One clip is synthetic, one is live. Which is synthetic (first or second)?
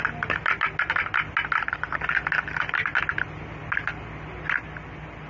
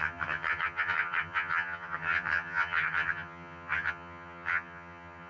second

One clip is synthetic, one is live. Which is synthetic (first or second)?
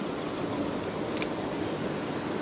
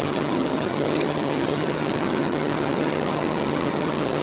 second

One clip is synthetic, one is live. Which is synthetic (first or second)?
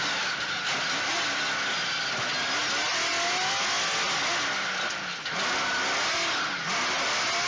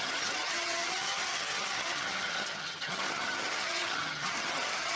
second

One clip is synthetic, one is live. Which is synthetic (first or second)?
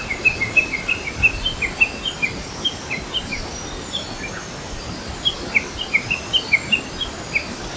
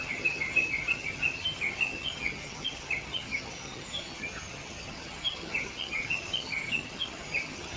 second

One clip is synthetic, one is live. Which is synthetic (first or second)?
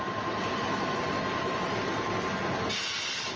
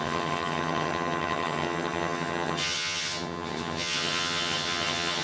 second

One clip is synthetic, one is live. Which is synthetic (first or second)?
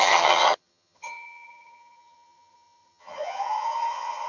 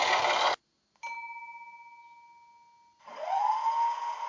first